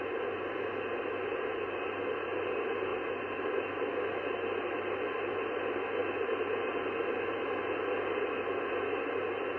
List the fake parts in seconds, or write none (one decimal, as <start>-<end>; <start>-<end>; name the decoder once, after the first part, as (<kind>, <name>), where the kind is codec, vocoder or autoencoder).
none